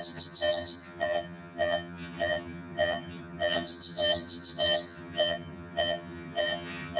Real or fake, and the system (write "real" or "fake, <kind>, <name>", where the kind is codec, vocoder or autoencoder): fake, vocoder, HiFi-GAN